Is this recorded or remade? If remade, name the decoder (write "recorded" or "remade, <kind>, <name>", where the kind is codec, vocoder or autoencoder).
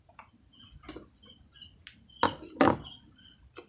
recorded